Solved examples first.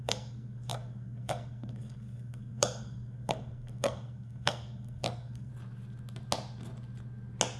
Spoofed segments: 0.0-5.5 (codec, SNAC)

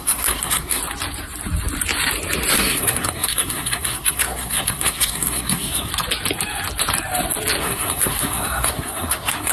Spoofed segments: 0.0-0.8 (codec, SNAC); 2.5-5.9; 7.6-9.5

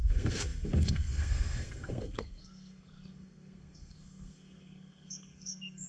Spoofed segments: 0.0-5.9 (codec, SNAC)

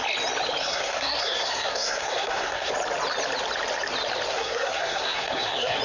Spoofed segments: 0.6-2.7 (codec, SNAC); 4.3-5.8

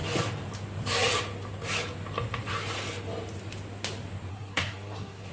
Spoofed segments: 4.3-5.3 (codec, SNAC)